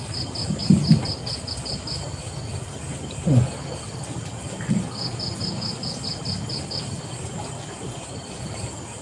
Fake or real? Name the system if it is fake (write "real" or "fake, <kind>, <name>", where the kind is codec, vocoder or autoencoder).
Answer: real